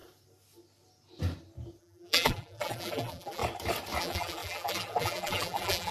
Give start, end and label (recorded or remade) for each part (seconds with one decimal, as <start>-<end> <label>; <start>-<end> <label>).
0.0-1.8 recorded; 1.8-3.4 remade; 3.4-4.0 recorded; 4.0-5.9 remade